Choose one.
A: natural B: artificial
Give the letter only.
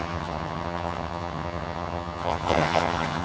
B